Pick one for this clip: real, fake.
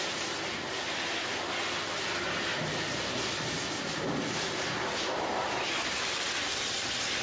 real